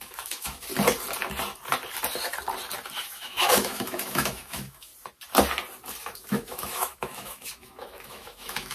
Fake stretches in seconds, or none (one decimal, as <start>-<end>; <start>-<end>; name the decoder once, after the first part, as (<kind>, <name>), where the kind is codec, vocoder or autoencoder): 0.0-0.7 (autoencoder, DAC-VAE); 3.0-4.9; 6.0-8.7